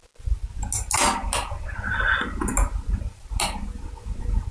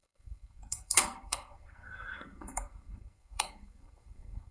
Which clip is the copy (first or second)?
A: second